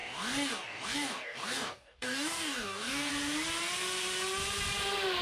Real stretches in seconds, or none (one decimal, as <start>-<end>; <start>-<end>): 3.1-5.2